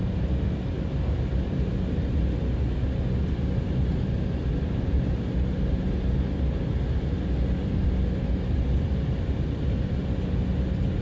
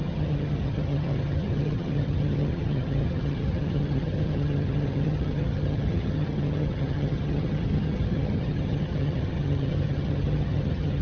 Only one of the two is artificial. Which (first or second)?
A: second